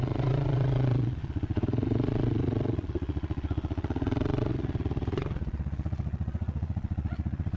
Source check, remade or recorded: remade